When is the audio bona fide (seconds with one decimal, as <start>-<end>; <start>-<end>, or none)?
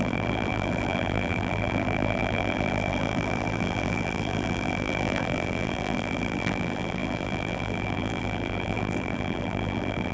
none